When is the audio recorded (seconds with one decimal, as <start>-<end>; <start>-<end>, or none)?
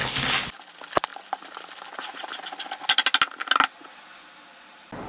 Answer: 0.0-5.1